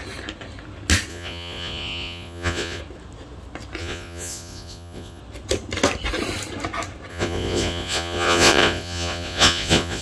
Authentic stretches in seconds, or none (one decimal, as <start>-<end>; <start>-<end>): 0.0-1.1; 2.8-3.8; 5.2-7.1